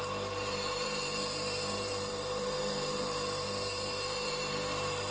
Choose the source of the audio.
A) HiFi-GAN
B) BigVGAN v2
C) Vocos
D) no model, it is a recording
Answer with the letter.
B